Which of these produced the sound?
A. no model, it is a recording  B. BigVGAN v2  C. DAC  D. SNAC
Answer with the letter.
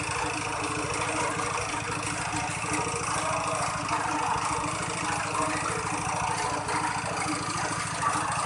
A